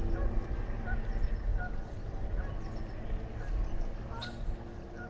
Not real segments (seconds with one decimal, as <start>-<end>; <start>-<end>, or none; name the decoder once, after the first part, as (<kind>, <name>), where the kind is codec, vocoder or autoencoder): none